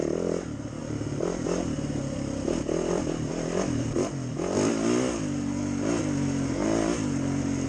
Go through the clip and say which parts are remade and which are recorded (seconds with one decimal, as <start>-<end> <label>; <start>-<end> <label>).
0.0-7.7 recorded